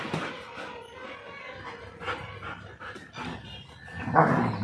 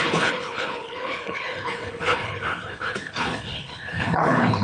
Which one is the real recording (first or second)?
first